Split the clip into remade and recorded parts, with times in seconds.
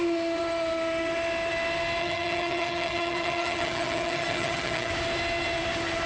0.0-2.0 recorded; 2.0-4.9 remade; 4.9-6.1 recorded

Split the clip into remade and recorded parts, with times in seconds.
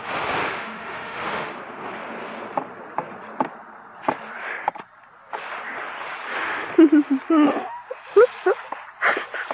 0.0-0.5 recorded; 0.5-1.5 remade; 1.5-9.5 recorded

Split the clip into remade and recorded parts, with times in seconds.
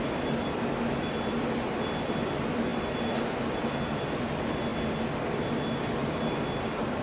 0.0-7.0 recorded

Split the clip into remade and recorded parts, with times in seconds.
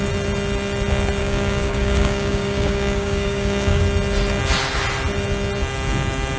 0.0-1.2 recorded; 1.2-3.8 remade; 3.8-6.4 recorded